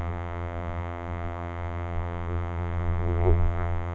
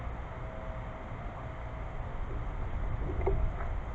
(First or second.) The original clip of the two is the second